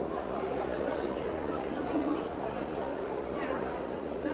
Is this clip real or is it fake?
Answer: fake